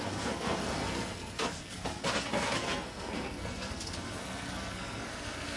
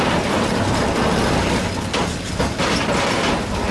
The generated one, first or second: first